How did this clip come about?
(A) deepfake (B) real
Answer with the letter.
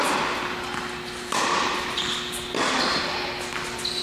B